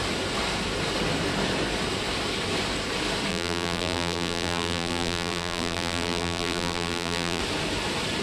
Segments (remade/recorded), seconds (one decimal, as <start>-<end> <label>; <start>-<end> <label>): 0.0-3.3 recorded; 3.3-7.4 remade; 7.4-8.2 recorded